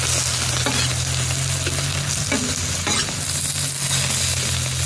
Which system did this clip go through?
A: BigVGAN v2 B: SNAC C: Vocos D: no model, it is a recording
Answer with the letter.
D